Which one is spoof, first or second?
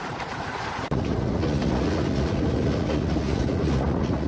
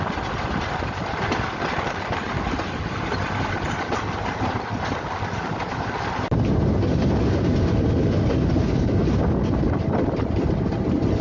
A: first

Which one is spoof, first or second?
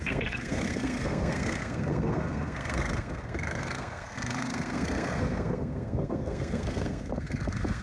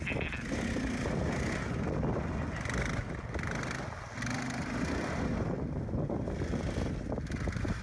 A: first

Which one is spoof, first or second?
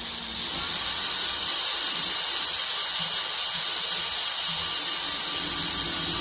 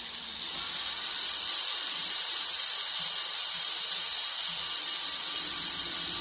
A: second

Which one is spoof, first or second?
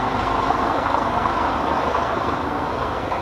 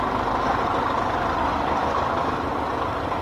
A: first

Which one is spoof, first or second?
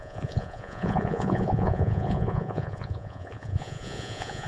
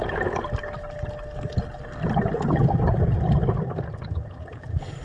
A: first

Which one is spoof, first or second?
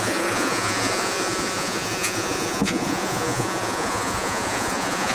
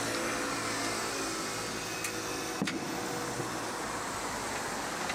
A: first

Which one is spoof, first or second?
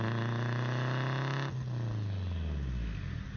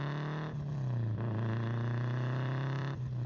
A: second